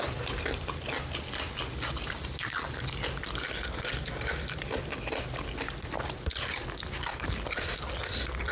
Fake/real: real